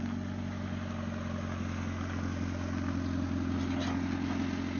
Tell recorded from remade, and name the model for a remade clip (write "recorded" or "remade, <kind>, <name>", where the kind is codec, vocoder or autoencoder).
recorded